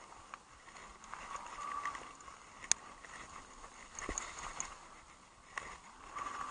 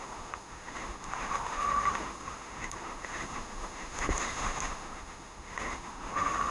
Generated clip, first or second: second